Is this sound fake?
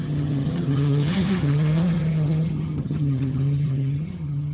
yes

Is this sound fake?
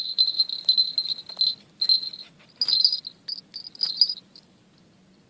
no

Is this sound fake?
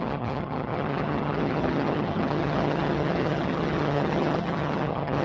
yes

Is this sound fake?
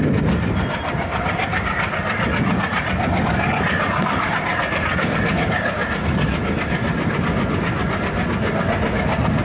no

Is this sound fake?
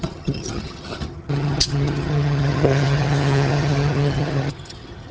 yes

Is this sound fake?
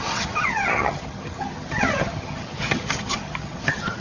yes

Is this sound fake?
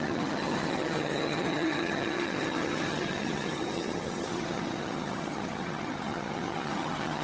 yes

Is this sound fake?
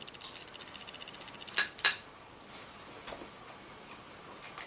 no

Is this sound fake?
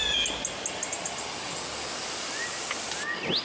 no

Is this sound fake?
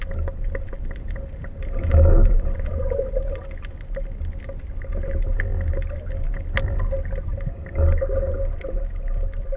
no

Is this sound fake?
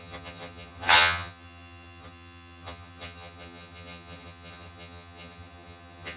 yes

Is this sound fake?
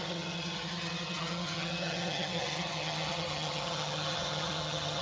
yes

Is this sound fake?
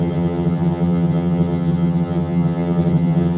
yes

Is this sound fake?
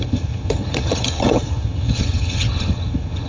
yes